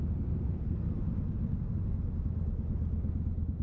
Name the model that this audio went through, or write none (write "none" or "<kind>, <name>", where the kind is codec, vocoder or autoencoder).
none